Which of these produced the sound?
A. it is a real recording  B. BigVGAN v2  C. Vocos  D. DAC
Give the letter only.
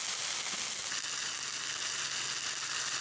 A